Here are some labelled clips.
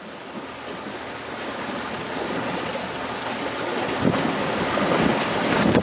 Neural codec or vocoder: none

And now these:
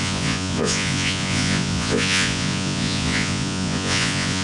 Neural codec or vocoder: vocoder, Vocos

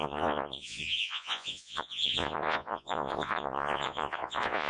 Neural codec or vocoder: vocoder, Vocos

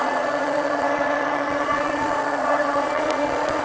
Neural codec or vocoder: vocoder, Vocos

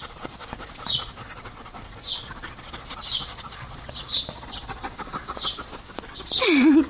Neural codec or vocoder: vocoder, Vocos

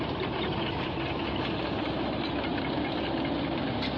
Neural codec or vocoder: none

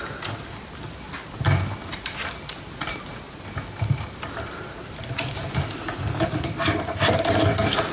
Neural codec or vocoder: none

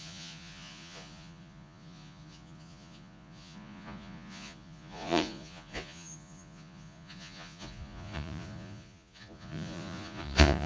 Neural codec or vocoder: vocoder, Vocos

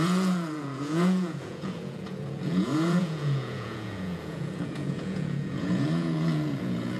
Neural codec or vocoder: vocoder, Vocos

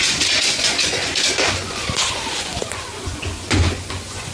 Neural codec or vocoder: vocoder, Vocos